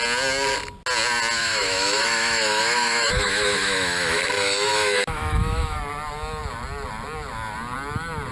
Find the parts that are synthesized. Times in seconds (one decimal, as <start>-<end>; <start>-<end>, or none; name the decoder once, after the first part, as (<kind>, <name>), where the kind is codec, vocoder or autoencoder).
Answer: 1.4-5.8 (autoencoder, DAC-VAE)